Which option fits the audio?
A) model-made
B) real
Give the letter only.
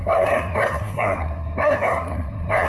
A